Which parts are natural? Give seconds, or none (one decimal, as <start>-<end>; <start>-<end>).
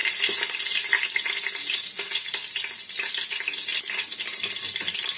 0.0-5.2